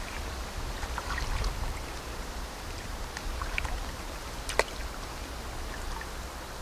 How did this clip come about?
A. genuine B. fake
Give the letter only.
A